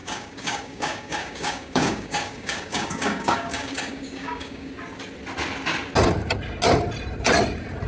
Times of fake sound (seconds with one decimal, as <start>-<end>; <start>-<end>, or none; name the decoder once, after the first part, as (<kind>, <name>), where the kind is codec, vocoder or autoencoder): 0.0-4.7 (codec, DAC)